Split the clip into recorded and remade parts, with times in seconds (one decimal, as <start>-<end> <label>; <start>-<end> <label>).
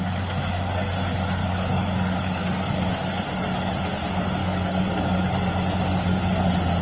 0.0-1.4 recorded; 1.4-3.2 remade; 3.2-4.4 recorded; 4.4-5.5 remade; 5.5-6.8 recorded